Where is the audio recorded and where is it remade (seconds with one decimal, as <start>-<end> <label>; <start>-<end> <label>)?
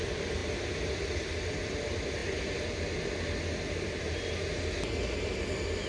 0.0-5.9 recorded